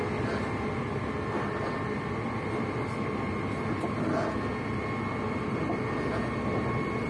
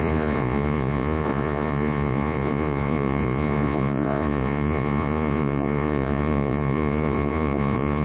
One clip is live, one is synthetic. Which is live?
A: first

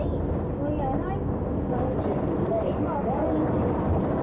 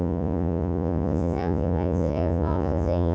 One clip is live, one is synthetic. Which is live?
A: first